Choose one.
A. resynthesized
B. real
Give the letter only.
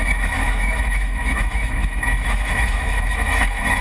A